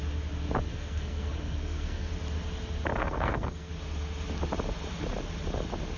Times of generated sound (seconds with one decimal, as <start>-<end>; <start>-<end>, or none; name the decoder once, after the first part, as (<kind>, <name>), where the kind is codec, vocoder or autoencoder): 0.7-2.1 (codec, SNAC); 3.0-3.7